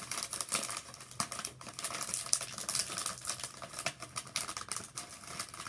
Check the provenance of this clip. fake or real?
real